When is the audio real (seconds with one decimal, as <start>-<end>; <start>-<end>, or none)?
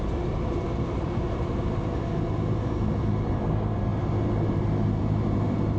0.0-5.8